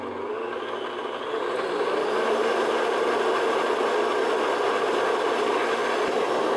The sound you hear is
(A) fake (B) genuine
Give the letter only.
B